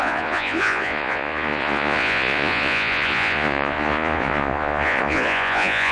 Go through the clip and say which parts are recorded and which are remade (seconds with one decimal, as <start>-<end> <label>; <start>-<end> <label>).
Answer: 0.0-5.9 remade